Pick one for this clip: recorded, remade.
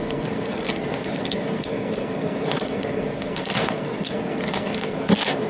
remade